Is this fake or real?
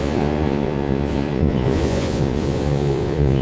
fake